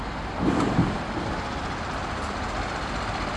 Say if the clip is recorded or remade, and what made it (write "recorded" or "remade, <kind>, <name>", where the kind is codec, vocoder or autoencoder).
recorded